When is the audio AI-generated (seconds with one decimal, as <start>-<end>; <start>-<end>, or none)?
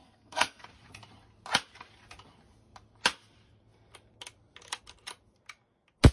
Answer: 0.0-0.6